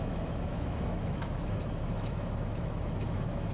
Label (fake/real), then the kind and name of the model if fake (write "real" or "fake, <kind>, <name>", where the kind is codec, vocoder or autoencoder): fake, autoencoder, DAC-VAE